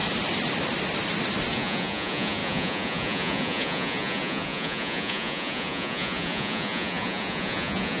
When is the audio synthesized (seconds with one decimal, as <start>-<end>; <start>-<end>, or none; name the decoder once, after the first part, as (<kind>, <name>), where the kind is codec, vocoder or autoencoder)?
1.5-8.0 (vocoder, Vocos)